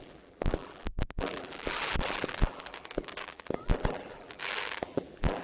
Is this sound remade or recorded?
remade